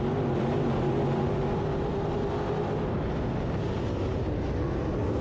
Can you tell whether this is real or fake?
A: real